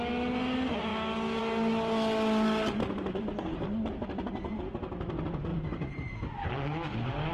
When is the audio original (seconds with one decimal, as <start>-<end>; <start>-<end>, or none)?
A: 0.0-5.5; 6.5-7.3

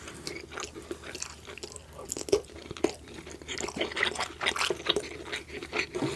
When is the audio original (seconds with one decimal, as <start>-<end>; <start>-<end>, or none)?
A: 0.0-6.2

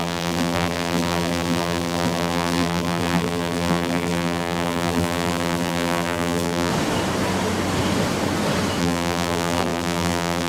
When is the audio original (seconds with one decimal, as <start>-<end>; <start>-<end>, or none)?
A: 6.7-8.8

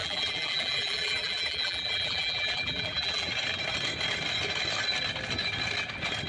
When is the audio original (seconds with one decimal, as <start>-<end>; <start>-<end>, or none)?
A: 3.3-6.3

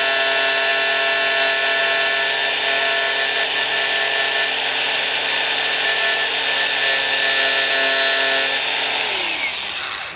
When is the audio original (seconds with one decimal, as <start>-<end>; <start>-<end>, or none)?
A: 0.0-10.2

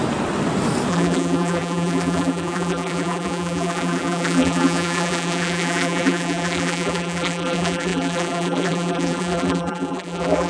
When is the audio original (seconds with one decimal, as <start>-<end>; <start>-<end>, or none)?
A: 0.0-0.9